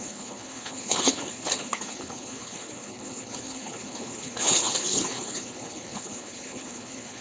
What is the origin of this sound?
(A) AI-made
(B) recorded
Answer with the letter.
A